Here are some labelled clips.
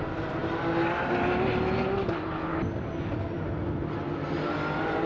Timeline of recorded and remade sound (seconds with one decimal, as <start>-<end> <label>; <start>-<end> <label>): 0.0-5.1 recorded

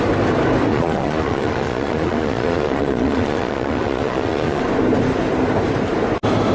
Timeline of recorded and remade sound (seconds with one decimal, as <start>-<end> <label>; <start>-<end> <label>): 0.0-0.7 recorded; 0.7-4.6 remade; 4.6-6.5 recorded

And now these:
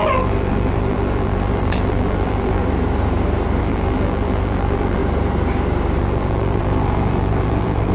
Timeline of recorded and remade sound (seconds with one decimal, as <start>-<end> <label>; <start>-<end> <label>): 0.0-2.6 remade; 2.6-3.6 recorded; 3.6-5.0 remade; 5.0-6.0 recorded; 6.0-7.9 remade

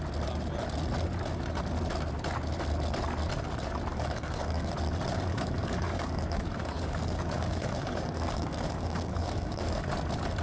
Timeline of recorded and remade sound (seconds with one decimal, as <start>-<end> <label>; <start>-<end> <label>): 0.0-3.9 recorded; 3.9-4.7 remade; 4.7-5.3 recorded; 5.3-9.8 remade; 9.8-10.4 recorded